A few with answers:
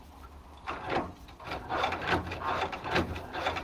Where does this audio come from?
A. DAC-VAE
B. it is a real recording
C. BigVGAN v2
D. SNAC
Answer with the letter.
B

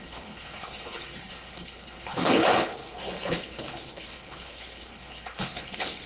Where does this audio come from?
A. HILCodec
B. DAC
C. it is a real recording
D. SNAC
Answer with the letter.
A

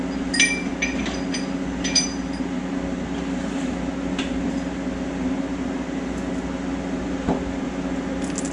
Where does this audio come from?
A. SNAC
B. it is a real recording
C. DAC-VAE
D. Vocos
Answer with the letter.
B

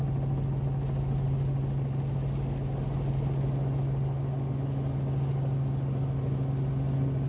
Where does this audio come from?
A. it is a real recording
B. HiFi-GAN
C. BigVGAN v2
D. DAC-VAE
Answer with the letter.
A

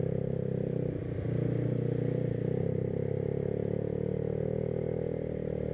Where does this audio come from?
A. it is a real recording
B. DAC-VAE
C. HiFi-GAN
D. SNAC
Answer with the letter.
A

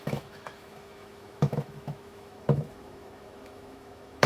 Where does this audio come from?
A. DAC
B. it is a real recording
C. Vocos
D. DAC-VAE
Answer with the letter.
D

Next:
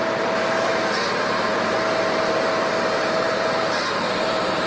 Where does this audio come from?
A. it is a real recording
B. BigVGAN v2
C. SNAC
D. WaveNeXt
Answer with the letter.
B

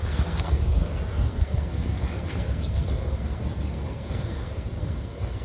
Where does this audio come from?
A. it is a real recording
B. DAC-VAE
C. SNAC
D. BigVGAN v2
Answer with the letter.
C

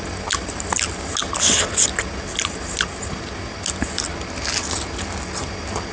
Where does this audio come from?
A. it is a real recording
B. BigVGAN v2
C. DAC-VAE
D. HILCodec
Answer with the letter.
A